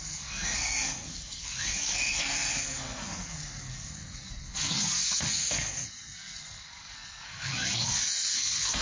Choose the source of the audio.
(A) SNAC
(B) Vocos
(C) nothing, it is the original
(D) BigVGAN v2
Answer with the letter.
A